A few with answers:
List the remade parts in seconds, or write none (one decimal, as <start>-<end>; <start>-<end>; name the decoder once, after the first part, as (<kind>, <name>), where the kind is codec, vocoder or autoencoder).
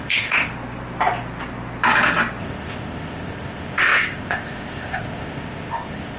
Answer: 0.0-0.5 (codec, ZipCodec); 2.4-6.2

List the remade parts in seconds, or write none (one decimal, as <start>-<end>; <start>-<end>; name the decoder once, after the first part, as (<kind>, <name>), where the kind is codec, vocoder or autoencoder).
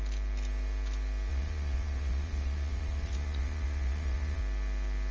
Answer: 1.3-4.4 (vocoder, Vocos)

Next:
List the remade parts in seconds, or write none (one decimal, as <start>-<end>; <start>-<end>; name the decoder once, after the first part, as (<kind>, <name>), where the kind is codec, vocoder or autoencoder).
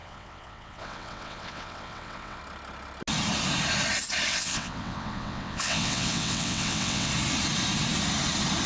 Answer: 0.0-2.4 (vocoder, WaveNeXt); 4.3-7.1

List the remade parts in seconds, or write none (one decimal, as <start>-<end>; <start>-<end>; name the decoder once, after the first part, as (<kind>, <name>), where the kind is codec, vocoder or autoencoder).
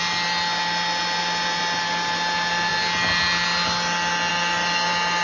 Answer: none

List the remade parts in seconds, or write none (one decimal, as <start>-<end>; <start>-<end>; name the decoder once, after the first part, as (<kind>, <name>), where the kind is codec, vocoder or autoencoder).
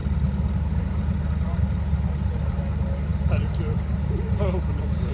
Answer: none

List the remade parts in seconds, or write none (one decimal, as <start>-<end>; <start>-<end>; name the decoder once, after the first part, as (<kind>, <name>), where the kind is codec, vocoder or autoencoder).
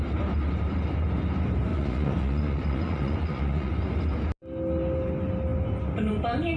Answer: 1.7-3.7 (vocoder, Vocos)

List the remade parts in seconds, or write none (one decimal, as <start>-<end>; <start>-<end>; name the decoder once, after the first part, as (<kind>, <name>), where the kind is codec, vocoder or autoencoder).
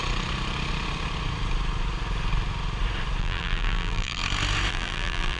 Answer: 3.2-4.2 (vocoder, BigVGAN v2); 4.7-5.4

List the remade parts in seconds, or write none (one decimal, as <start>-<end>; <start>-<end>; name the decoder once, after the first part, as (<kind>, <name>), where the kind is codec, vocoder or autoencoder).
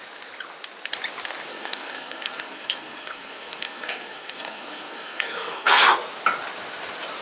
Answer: 1.5-5.8 (codec, SNAC)